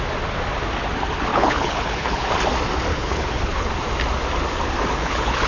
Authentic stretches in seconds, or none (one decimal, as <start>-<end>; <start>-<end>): 0.0-1.3; 2.3-2.9; 3.7-5.0